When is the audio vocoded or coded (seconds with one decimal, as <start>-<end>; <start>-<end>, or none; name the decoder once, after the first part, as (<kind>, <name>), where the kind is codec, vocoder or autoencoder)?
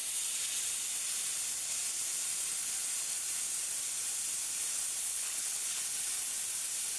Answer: 5.0-5.8 (codec, HILCodec)